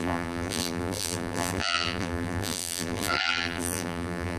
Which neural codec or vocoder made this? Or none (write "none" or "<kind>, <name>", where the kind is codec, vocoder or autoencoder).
vocoder, BigVGAN v2